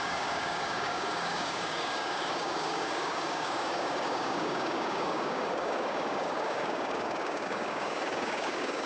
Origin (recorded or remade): remade